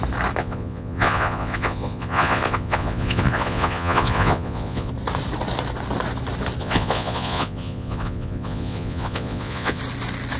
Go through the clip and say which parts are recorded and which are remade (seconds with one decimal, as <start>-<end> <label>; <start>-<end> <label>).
0.0-0.4 recorded; 0.4-4.9 remade; 4.9-6.6 recorded; 6.6-9.8 remade; 9.8-10.4 recorded